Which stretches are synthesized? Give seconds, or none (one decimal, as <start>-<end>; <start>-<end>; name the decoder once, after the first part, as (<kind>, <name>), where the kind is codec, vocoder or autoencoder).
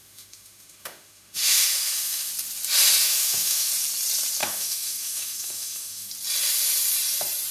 0.0-2.3 (autoencoder, DAC-VAE); 3.0-3.7; 4.4-6.1